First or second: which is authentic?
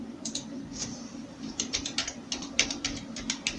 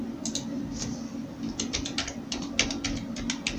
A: second